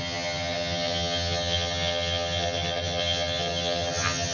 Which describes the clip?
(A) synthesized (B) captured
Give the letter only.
A